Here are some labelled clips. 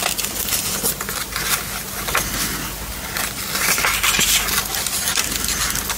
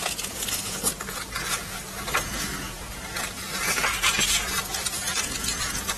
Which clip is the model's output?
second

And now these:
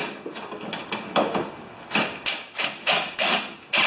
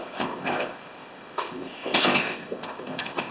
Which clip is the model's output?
second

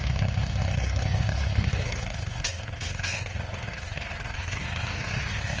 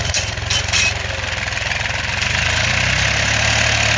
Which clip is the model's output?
first